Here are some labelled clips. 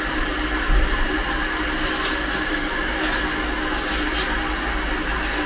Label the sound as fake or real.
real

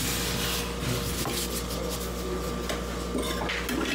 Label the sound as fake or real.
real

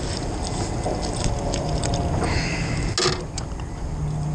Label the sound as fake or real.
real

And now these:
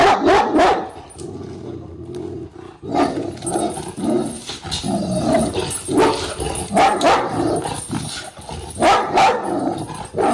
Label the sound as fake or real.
real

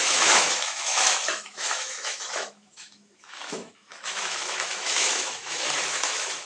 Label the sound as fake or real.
fake